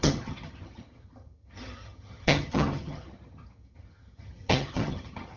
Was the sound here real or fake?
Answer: fake